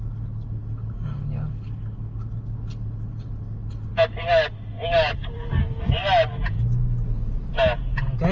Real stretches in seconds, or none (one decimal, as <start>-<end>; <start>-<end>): 0.0-8.3